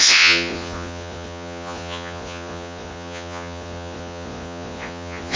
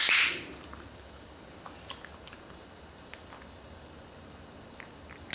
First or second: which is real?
second